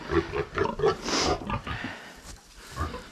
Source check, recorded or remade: recorded